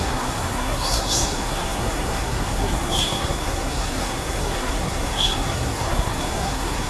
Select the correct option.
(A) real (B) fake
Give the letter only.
B